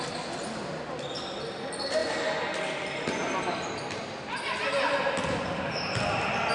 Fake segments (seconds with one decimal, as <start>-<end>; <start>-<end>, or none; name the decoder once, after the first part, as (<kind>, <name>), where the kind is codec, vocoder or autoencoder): 2.0-5.4 (vocoder, BigVGAN v2)